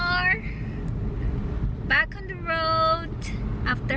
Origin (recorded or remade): recorded